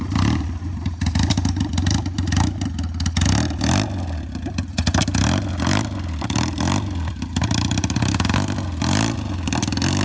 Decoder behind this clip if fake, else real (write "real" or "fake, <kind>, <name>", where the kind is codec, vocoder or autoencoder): real